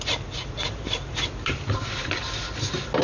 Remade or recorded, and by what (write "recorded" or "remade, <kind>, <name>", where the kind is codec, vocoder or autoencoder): recorded